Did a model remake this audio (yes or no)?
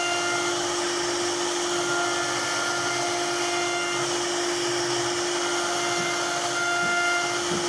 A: no